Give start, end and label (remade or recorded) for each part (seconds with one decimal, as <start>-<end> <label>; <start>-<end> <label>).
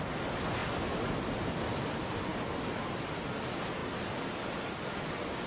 0.0-0.6 remade; 0.6-1.4 recorded; 1.4-5.5 remade